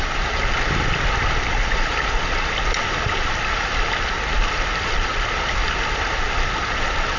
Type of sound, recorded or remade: recorded